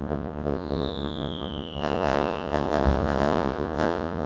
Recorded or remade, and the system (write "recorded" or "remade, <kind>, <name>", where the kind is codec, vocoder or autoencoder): remade, vocoder, Vocos